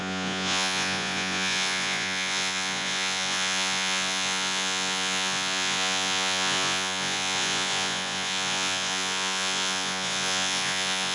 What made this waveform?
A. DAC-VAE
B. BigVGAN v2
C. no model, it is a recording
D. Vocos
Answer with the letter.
D